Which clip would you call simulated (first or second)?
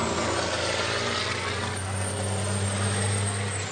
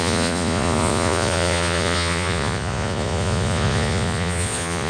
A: second